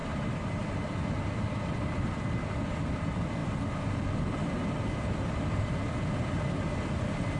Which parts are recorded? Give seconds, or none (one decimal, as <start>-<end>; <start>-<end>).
3.4-5.6